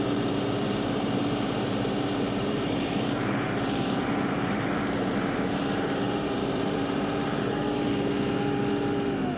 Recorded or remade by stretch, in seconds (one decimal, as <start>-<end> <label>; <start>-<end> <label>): 0.0-7.9 remade; 7.9-9.4 recorded